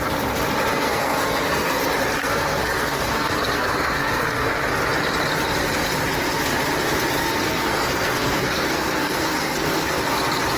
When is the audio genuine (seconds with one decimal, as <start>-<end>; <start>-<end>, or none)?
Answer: 0.0-0.7; 1.8-2.2; 4.7-7.2; 10.0-10.6